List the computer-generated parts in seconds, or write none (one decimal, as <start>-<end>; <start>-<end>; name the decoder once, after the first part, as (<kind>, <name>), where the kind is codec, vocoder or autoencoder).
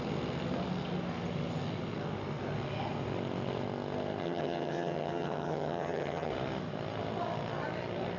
4.2-6.3 (vocoder, HiFi-GAN)